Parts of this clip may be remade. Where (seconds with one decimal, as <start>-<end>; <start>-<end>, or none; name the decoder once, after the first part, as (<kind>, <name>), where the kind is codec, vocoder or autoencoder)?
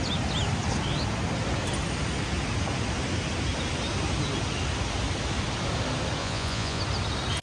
6.2-6.8 (vocoder, Vocos)